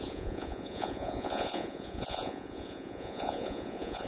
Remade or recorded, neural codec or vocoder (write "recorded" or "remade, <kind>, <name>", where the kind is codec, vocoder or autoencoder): remade, vocoder, Vocos